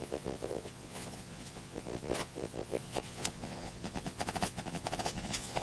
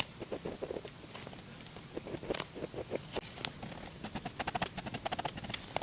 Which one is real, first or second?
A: second